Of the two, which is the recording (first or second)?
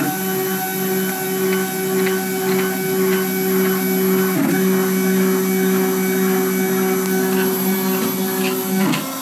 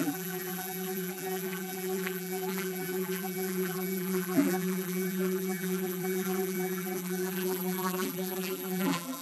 first